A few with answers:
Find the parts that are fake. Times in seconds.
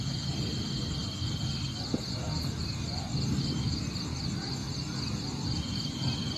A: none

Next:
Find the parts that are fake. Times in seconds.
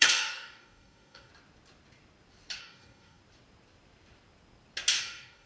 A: 0.0-1.3; 2.6-3.2; 5.0-5.5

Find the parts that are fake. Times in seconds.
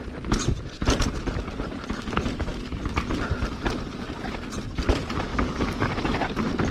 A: 5.3-5.9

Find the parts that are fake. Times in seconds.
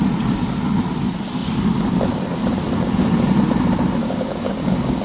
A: 4.0-5.0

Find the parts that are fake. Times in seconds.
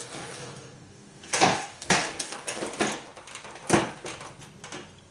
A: 0.0-2.6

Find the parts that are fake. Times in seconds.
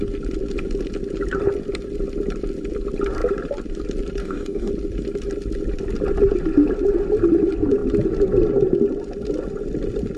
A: 4.2-4.7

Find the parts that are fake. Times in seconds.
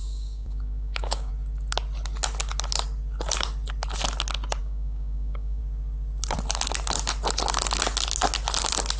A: 0.0-1.3; 4.6-5.6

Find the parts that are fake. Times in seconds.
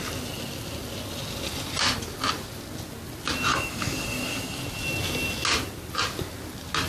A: 3.5-4.6